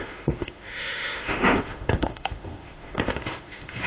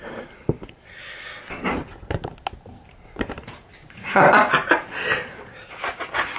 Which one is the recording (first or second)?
second